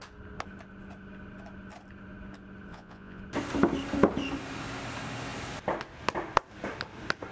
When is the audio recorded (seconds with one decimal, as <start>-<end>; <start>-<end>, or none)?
0.0-2.7; 3.2-7.3